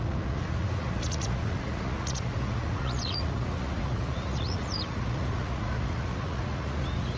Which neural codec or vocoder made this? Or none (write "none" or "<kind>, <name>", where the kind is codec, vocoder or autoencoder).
vocoder, Vocos